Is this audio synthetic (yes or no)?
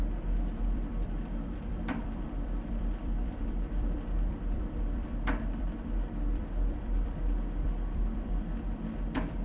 yes